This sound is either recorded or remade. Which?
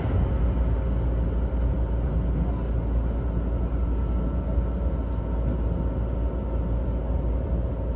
recorded